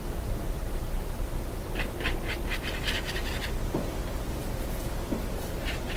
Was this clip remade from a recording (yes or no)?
no